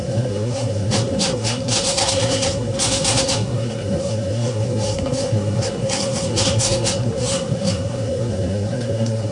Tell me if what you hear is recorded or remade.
remade